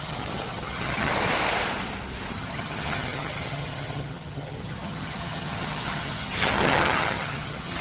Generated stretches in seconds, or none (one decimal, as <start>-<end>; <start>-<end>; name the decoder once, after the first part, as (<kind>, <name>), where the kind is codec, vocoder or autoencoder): 0.0-1.1 (vocoder, HiFi-GAN); 2.3-7.8